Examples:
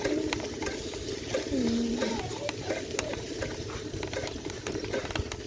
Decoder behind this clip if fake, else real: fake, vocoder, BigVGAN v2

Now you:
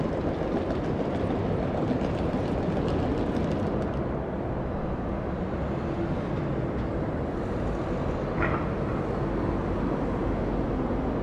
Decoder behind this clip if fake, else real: real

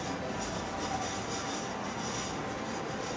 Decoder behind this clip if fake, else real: real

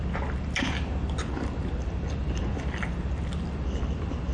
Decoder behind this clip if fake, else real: real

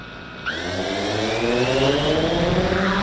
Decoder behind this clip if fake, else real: real